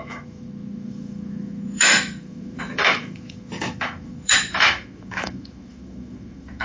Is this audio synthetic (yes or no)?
yes